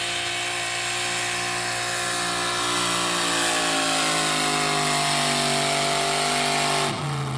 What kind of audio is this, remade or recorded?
recorded